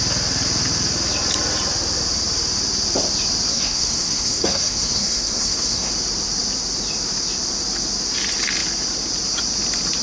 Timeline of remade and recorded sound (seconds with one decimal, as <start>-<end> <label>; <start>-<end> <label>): 0.0-3.5 recorded; 3.5-5.9 remade; 5.9-10.0 recorded